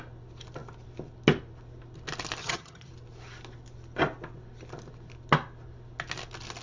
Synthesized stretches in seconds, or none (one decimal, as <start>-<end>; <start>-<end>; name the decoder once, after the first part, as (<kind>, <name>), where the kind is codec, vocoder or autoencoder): 2.4-2.9 (vocoder, HiFi-GAN)